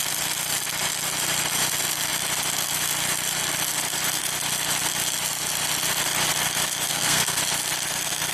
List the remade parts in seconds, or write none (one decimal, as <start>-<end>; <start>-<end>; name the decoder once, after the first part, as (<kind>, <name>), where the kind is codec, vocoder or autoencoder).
6.9-7.4 (codec, SNAC)